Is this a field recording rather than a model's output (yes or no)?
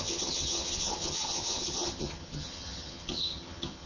no